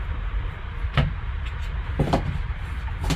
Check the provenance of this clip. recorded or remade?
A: recorded